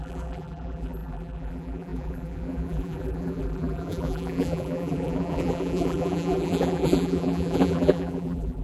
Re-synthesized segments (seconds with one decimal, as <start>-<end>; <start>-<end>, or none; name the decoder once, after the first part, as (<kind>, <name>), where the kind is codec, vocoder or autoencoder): 0.0-8.6 (vocoder, BigVGAN v2)